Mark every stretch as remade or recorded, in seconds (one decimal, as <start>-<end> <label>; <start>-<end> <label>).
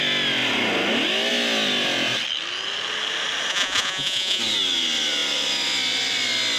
0.0-3.5 recorded; 3.5-4.4 remade; 4.4-6.6 recorded